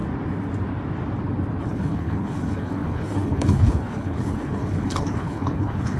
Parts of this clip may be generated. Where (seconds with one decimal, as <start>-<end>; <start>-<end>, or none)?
1.6-6.0